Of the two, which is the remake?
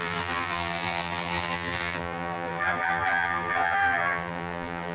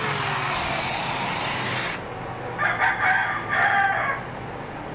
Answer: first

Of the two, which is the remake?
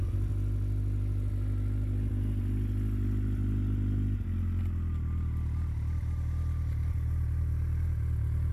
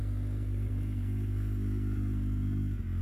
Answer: second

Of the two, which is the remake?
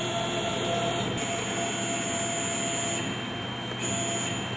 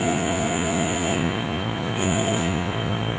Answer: second